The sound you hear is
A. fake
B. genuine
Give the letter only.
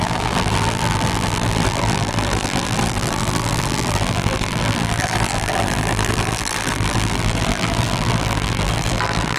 A